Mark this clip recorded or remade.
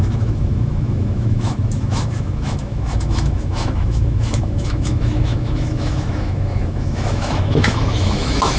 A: remade